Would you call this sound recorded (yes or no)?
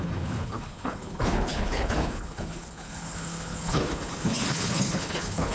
no